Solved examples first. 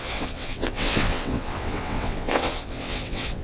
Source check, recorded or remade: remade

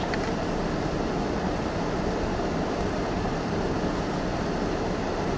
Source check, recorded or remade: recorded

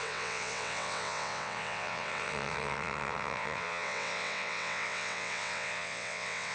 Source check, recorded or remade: remade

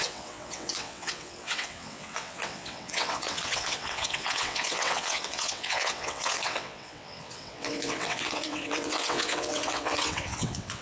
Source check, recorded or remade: remade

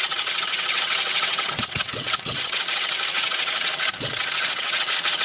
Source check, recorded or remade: remade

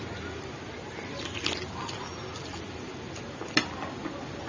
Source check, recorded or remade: recorded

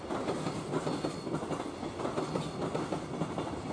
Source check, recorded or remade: recorded